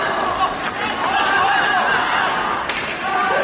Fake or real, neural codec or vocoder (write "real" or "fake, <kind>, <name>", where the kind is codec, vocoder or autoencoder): real